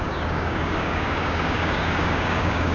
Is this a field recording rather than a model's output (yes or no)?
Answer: no